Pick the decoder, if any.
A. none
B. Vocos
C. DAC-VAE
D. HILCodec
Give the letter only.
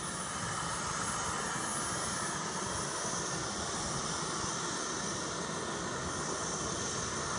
A